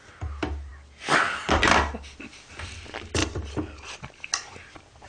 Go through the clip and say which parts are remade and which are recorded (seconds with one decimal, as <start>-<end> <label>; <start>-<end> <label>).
0.0-3.2 recorded; 3.2-4.3 remade; 4.3-5.1 recorded